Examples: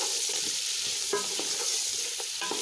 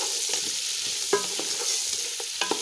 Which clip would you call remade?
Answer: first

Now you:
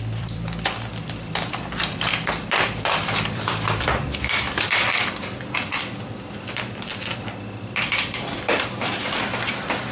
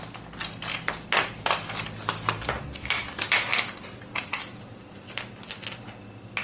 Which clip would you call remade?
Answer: first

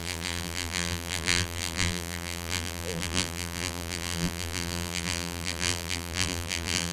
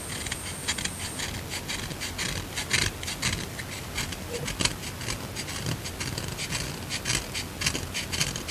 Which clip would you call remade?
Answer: first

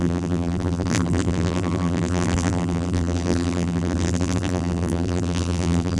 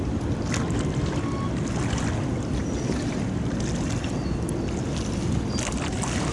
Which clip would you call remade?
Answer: first